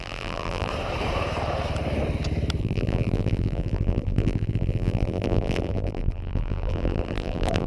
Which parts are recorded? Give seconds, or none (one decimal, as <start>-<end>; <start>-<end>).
0.7-2.6